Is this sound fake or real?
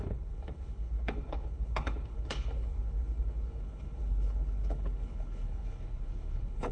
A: fake